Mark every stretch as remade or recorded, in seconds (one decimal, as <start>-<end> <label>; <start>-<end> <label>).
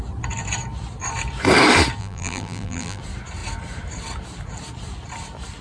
0.0-2.0 recorded; 2.0-3.0 remade; 3.0-5.6 recorded